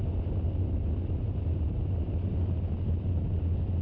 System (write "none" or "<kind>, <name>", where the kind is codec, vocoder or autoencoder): none